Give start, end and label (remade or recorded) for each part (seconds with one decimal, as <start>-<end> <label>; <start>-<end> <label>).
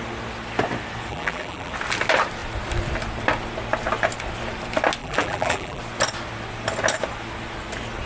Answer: 0.0-1.1 recorded; 1.1-1.7 remade; 1.7-5.0 recorded; 5.0-5.8 remade; 5.8-8.1 recorded